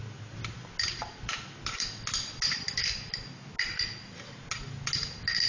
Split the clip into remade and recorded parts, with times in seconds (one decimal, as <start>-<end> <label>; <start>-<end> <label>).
0.0-5.5 recorded

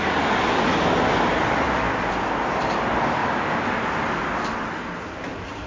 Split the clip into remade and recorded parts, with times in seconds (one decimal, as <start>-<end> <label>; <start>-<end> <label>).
0.0-5.7 recorded

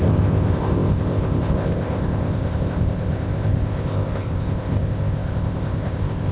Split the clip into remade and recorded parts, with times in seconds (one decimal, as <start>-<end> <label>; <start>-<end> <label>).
0.0-6.3 remade

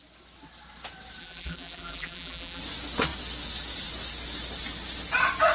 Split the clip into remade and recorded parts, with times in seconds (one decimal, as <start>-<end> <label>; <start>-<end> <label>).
0.0-1.2 recorded; 1.2-2.6 remade; 2.6-5.5 recorded

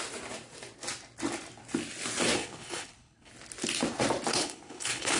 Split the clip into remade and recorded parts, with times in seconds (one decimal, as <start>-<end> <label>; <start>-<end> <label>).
0.0-2.4 recorded; 2.4-3.3 remade; 3.3-4.3 recorded; 4.3-5.2 remade

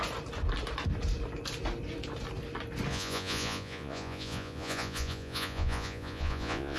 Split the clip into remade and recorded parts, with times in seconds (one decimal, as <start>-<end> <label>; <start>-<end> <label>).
0.0-2.9 recorded; 2.9-6.8 remade

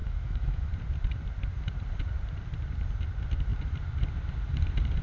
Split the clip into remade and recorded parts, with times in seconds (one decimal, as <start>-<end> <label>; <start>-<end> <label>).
0.0-0.7 remade; 0.7-5.0 recorded